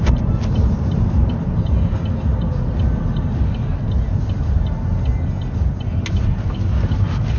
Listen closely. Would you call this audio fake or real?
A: real